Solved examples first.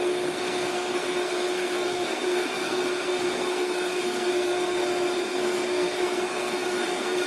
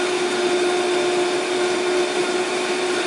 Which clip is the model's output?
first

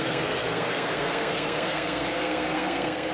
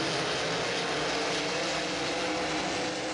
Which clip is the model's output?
first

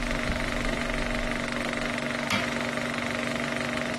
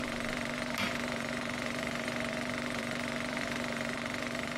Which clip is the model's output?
second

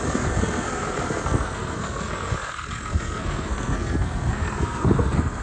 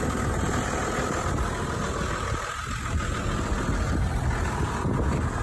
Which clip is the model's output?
first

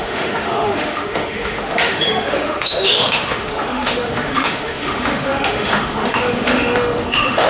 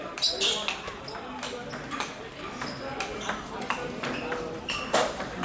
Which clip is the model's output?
first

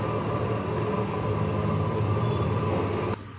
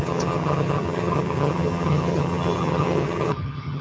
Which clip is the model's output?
second